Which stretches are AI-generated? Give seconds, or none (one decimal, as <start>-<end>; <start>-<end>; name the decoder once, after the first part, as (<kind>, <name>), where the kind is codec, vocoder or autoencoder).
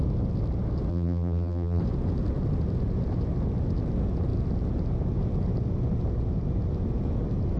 0.9-1.8 (vocoder, BigVGAN v2)